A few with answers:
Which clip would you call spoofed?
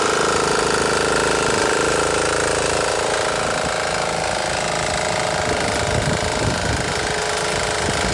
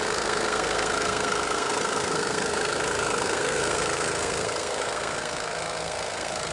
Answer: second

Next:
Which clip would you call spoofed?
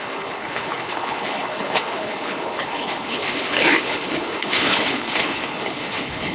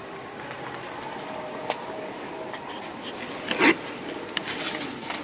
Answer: first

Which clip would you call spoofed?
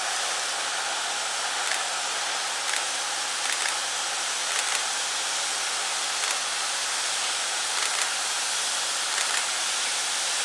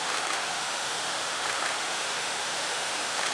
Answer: second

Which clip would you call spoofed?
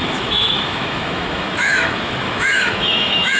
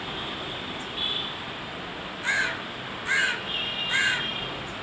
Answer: first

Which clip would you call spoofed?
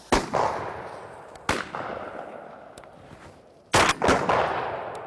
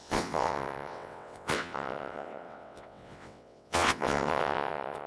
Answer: second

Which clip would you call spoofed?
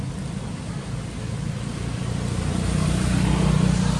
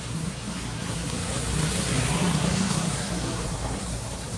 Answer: second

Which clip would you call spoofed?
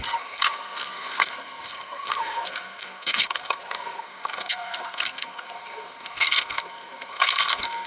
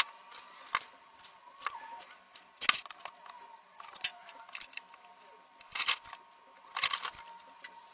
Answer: first